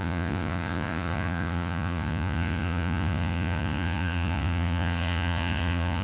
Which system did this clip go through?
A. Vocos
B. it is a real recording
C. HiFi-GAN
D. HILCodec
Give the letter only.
A